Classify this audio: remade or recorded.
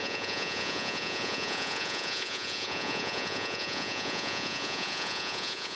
remade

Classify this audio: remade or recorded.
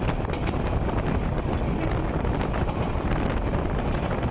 recorded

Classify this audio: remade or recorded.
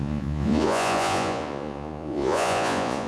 remade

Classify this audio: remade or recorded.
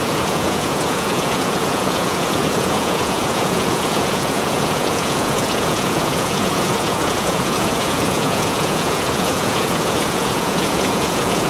remade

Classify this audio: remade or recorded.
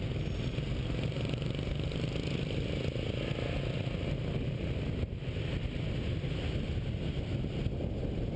recorded